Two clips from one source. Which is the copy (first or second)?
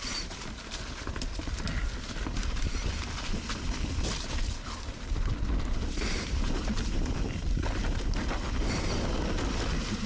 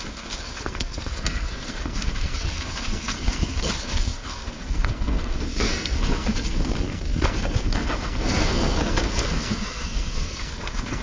second